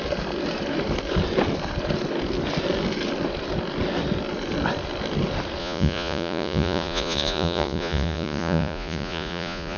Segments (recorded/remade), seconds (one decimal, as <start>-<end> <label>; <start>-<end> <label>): 0.0-5.6 recorded; 5.6-9.8 remade